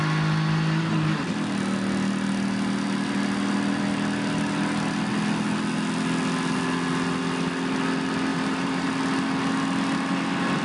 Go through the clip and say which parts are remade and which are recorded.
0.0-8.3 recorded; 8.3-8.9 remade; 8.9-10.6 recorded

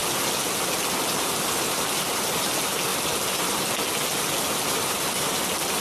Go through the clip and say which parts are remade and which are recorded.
0.0-5.8 recorded

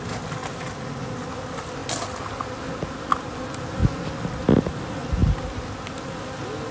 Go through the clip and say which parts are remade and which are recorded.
0.0-6.7 recorded

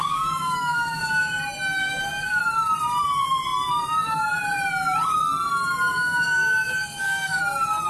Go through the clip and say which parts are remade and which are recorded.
0.0-1.4 remade; 1.4-1.8 recorded; 1.8-2.4 remade; 2.4-5.9 recorded; 5.9-7.4 remade; 7.4-7.9 recorded

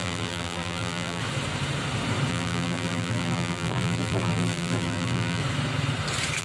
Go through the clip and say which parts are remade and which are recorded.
0.0-1.2 remade; 1.2-2.3 recorded; 2.3-5.4 remade; 5.4-6.4 recorded

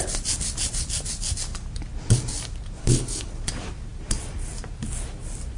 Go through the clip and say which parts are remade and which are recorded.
0.0-2.8 recorded; 2.8-3.3 remade; 3.3-5.6 recorded

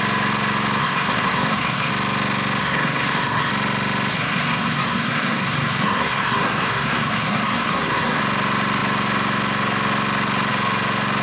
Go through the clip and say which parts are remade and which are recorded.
0.0-0.8 recorded; 0.8-1.9 remade; 1.9-2.6 recorded; 2.6-3.5 remade; 3.5-4.1 recorded; 4.1-8.2 remade; 8.2-11.2 recorded